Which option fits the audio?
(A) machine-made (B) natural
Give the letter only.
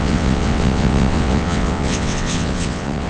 A